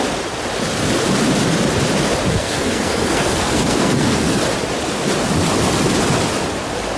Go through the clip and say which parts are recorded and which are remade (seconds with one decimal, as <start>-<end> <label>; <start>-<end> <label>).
0.0-2.3 recorded; 2.3-4.4 remade; 4.4-7.0 recorded